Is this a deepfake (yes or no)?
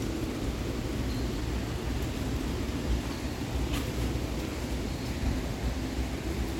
no